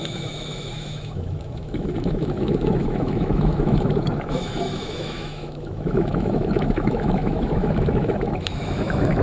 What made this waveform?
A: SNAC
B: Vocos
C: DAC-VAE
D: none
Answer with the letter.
C